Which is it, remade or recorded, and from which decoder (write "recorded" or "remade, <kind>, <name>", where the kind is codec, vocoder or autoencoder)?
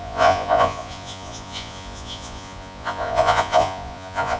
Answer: remade, vocoder, Vocos